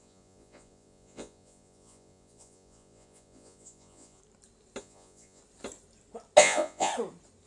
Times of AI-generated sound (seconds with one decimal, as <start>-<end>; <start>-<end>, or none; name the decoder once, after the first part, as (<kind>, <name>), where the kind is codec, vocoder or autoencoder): 0.0-4.2 (vocoder, Vocos); 4.8-5.4; 6.4-6.9